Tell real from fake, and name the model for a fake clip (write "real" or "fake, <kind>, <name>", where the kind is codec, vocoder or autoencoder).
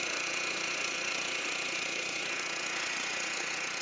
fake, vocoder, Vocos